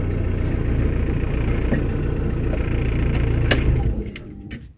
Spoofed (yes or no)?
no